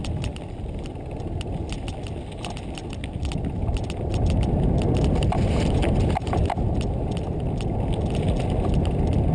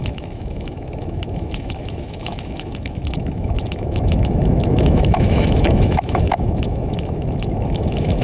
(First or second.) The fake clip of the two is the second